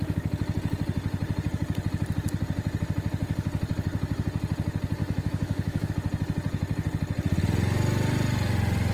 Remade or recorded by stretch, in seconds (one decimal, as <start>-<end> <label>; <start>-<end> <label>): 0.0-5.0 recorded; 5.0-5.9 remade; 5.9-8.9 recorded